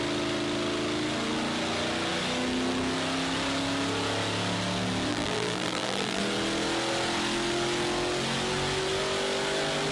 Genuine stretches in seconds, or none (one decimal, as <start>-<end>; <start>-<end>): 0.0-5.1; 6.2-9.9